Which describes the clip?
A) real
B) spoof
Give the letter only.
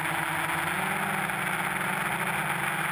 A